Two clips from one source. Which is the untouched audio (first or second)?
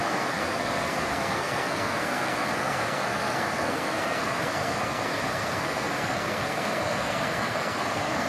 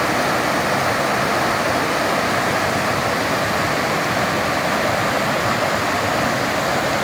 second